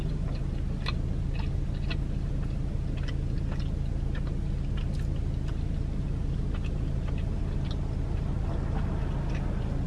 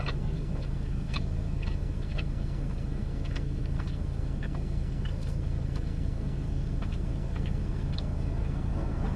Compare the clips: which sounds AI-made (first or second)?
second